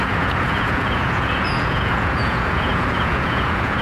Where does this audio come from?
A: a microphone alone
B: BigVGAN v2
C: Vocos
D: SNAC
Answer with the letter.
C